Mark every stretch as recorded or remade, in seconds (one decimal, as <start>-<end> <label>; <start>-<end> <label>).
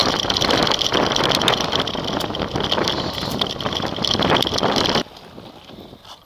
0.0-2.9 recorded; 2.9-6.3 remade